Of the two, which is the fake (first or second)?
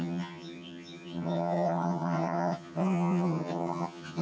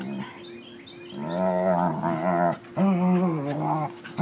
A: first